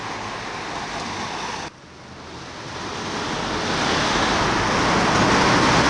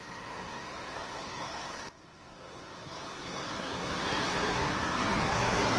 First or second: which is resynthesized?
second